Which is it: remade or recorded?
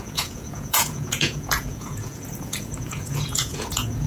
remade